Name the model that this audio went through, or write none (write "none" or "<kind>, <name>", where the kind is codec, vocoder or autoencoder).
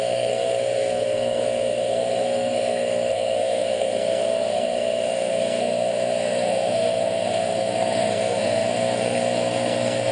codec, SNAC